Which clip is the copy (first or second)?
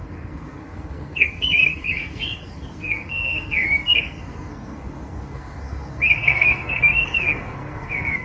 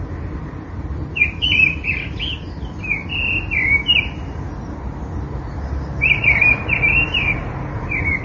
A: first